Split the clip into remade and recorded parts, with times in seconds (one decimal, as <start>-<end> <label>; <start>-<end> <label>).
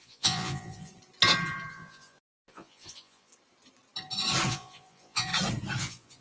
0.0-0.9 remade; 0.9-1.7 recorded; 1.7-3.3 remade; 3.3-4.5 recorded; 4.5-5.3 remade; 5.3-5.8 recorded; 5.8-6.2 remade